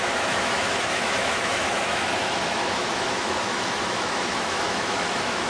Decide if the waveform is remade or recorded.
remade